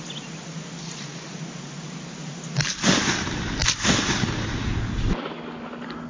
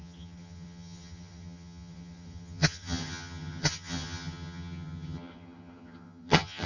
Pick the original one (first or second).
first